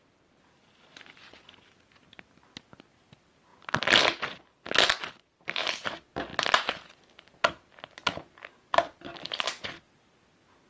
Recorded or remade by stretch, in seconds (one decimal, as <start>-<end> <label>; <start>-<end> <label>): 0.0-10.7 recorded